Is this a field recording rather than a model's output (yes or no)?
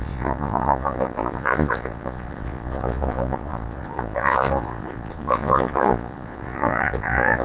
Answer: no